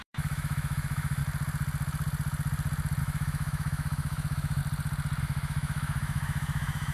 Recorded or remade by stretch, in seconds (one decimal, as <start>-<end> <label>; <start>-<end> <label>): 0.0-1.2 remade; 1.2-3.0 recorded; 3.0-4.6 remade; 4.6-5.2 recorded; 5.2-6.9 remade